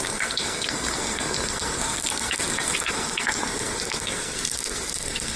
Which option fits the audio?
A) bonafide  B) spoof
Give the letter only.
B